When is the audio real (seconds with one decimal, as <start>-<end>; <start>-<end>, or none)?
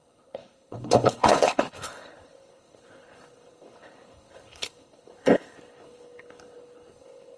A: none